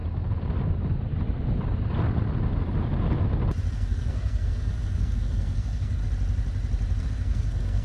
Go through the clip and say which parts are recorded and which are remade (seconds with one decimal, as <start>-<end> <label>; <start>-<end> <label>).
0.0-3.7 recorded; 3.7-6.0 remade; 6.0-7.0 recorded; 7.0-7.8 remade